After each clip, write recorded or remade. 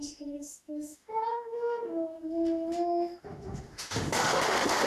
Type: remade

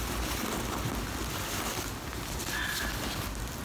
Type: recorded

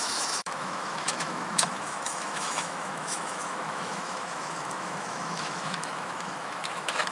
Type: remade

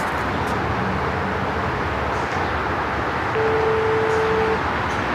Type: recorded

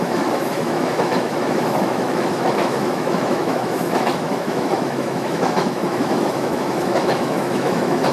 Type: remade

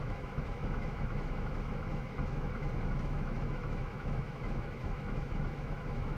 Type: remade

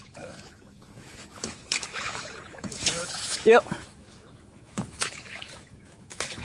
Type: remade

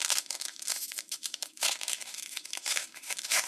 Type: remade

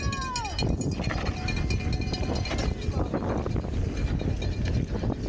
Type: recorded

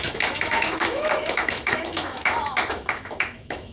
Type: remade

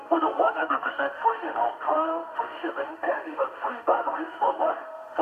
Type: remade